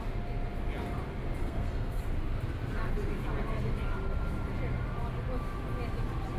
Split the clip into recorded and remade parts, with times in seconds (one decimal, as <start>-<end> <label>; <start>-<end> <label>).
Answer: 0.0-1.4 recorded; 1.4-2.0 remade; 2.0-6.4 recorded